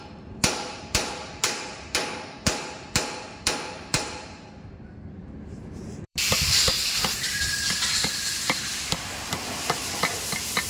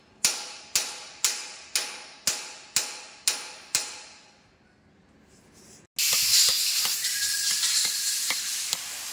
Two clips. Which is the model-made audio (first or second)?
first